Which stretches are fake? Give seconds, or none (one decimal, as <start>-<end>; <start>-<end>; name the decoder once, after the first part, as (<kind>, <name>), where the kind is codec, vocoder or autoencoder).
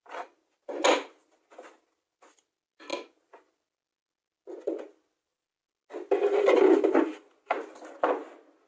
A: none